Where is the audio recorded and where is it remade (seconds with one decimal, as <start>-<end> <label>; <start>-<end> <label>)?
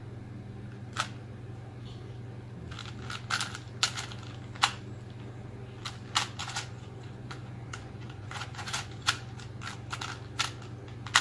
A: 0.0-6.4 recorded; 6.4-9.4 remade; 9.4-11.2 recorded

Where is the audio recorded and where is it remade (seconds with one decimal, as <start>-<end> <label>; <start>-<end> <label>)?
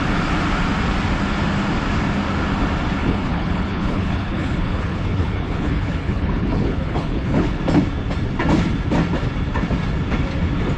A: 0.0-3.0 recorded; 3.0-7.6 remade; 7.6-10.8 recorded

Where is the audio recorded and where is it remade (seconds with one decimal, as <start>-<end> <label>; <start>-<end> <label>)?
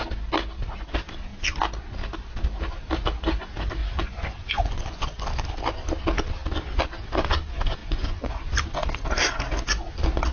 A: 0.0-3.8 recorded; 3.8-5.1 remade; 5.1-7.8 recorded; 7.8-8.3 remade; 8.3-10.3 recorded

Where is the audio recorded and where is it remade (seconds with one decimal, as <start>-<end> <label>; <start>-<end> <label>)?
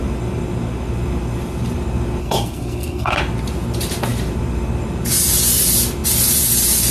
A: 0.0-2.2 recorded; 2.2-3.2 remade; 3.2-6.9 recorded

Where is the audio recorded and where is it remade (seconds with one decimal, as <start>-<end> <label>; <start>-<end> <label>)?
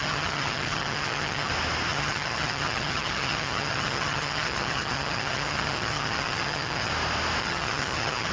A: 0.0-1.5 remade; 1.5-1.9 recorded; 1.9-6.9 remade; 6.9-7.4 recorded; 7.4-8.3 remade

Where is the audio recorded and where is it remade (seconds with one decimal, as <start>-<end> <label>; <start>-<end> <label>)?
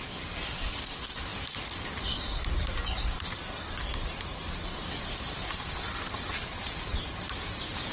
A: 0.0-6.6 recorded; 6.6-7.2 remade; 7.2-7.9 recorded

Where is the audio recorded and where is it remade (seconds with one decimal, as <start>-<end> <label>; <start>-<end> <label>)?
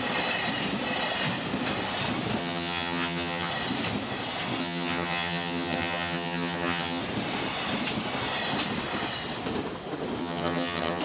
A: 0.0-2.4 recorded; 2.4-3.5 remade; 3.5-4.6 recorded; 4.6-7.0 remade; 7.0-10.2 recorded; 10.2-11.0 remade